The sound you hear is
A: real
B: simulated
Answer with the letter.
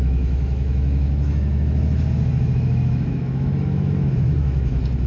B